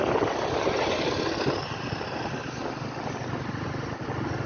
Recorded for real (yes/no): yes